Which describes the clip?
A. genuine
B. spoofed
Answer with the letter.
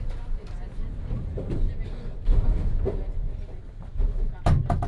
A